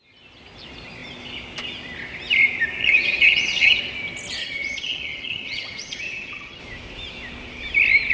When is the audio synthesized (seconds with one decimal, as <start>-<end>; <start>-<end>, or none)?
2.8-3.8; 4.4-6.6